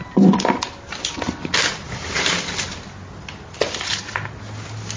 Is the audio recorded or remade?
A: recorded